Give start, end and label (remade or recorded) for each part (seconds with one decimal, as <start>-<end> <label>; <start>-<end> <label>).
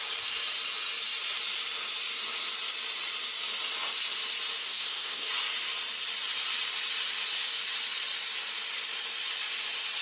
0.0-4.6 recorded; 4.6-5.3 remade; 5.3-10.0 recorded